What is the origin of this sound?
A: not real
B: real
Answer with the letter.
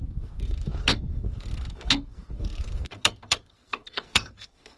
A